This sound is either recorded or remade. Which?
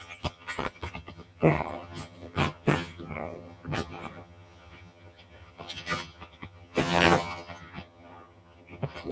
remade